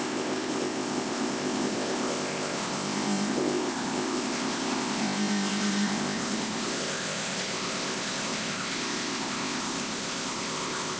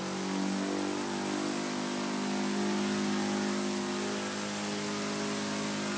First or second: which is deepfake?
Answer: first